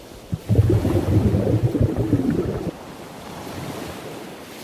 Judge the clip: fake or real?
real